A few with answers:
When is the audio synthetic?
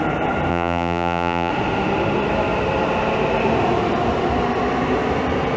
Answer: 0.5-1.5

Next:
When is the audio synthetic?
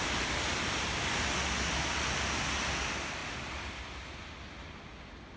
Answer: 3.2-4.2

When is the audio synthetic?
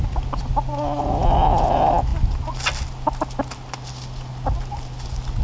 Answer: none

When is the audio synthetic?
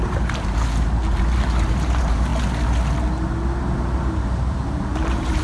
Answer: 0.0-2.3; 4.0-5.4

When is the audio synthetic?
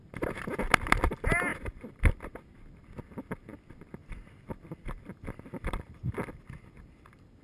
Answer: 1.5-2.1; 4.0-7.4